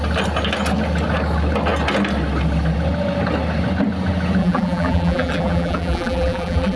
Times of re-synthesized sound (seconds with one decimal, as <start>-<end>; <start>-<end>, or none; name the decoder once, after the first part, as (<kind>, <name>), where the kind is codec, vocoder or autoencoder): 4.4-6.8 (vocoder, BigVGAN v2)